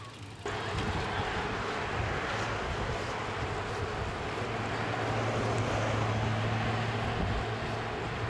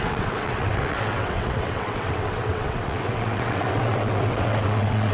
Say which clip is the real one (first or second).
first